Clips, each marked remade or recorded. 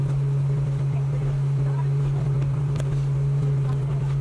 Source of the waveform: recorded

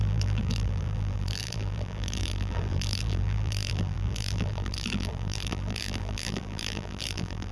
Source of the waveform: remade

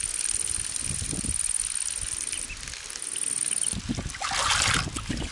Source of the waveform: recorded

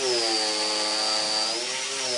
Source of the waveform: recorded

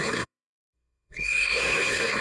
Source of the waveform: remade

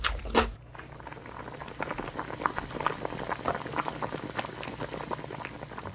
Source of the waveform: recorded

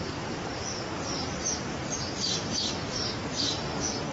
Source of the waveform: remade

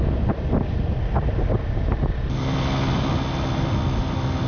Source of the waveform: recorded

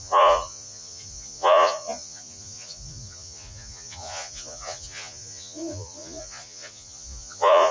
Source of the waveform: remade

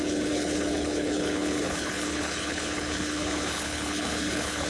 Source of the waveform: remade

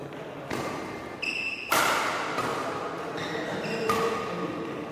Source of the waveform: recorded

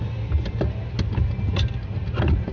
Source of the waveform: recorded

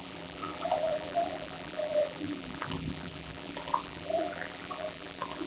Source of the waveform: remade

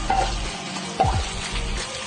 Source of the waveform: remade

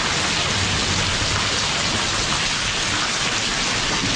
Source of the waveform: recorded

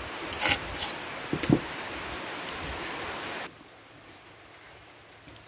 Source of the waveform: recorded